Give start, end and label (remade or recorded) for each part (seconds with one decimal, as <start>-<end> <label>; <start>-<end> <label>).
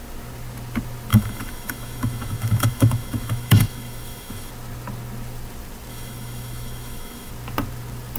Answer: 0.0-1.1 recorded; 1.1-4.5 remade; 4.5-5.9 recorded; 5.9-7.3 remade; 7.3-8.2 recorded